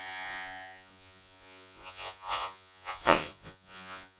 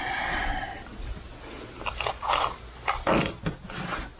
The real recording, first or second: second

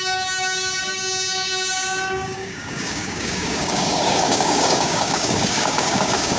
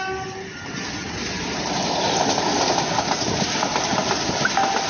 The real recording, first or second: second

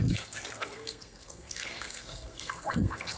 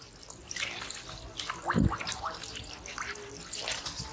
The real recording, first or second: second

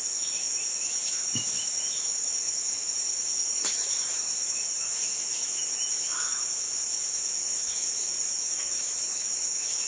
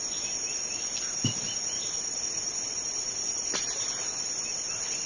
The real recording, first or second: second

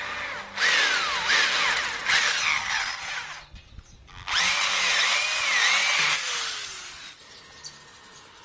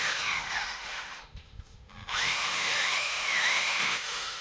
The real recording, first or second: first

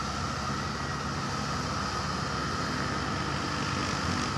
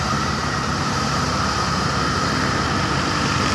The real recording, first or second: first